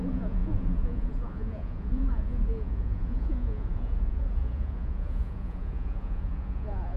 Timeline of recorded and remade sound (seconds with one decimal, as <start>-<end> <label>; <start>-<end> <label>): 0.0-7.0 remade